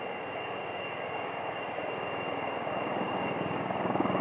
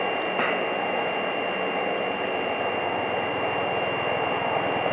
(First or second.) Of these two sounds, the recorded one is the second